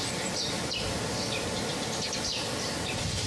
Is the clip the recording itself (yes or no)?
yes